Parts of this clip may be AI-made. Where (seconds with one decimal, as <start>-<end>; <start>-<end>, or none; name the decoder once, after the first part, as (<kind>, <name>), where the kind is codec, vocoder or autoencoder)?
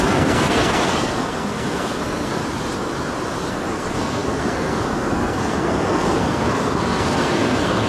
0.0-2.4 (codec, SNAC); 3.5-7.9